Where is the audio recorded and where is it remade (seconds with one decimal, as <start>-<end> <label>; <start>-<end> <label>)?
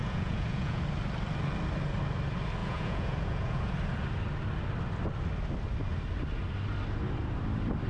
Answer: 0.0-0.8 remade; 0.8-2.6 recorded; 2.6-3.7 remade; 3.7-7.9 recorded